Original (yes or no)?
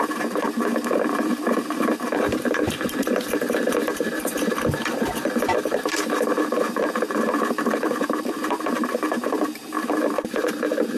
no